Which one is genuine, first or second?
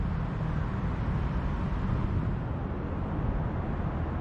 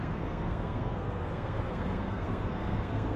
first